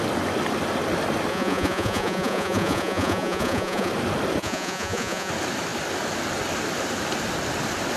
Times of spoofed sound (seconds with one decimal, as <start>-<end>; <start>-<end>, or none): 1.3-3.9; 4.4-5.3